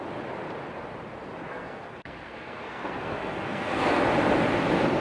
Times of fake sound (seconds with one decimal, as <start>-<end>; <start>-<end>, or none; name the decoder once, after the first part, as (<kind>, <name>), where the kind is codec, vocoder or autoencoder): 1.5-4.0 (codec, SNAC)